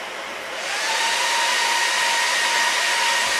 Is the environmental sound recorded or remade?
recorded